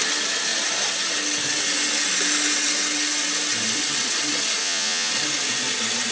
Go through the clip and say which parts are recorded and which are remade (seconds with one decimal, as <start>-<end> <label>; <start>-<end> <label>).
0.0-4.6 recorded; 4.6-5.1 remade; 5.1-6.1 recorded